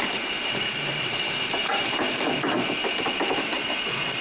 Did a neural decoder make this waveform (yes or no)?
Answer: yes